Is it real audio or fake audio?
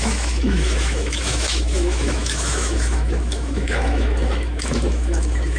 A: fake